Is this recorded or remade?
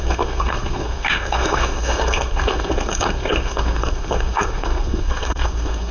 remade